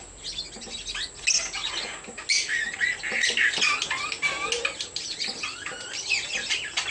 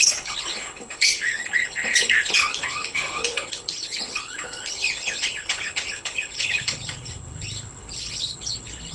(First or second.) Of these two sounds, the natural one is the first